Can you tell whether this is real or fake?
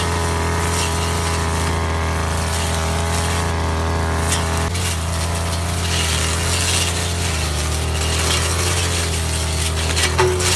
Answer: real